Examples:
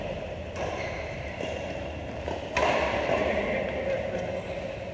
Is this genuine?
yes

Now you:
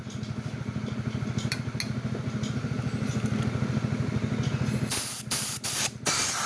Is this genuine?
yes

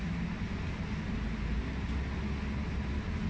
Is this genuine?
yes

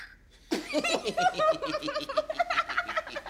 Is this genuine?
yes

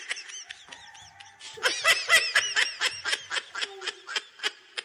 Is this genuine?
yes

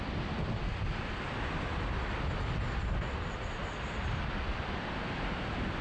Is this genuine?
yes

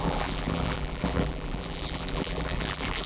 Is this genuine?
no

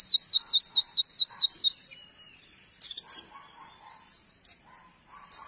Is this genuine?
no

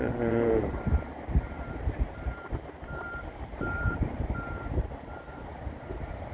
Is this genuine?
no